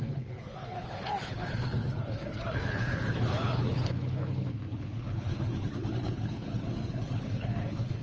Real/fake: fake